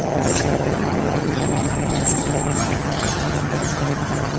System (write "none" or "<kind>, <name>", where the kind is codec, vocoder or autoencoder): vocoder, HiFi-GAN